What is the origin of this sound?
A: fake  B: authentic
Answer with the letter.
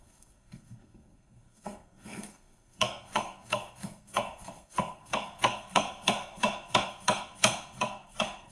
A